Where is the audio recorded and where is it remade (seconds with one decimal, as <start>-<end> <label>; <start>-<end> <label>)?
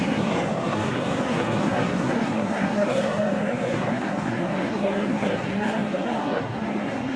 0.0-7.2 remade